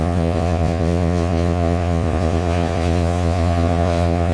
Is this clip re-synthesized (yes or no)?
yes